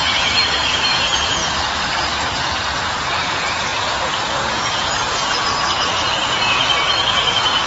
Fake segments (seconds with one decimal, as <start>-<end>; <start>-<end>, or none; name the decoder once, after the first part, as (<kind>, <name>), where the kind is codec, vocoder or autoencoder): 0.0-1.4 (vocoder, Vocos); 2.3-7.7